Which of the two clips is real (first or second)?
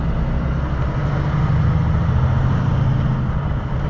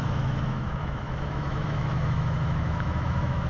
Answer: first